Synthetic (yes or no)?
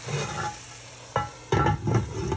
no